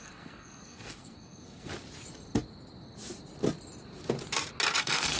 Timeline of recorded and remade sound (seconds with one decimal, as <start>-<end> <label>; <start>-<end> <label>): 0.0-1.7 remade; 1.7-4.8 recorded; 4.8-5.2 remade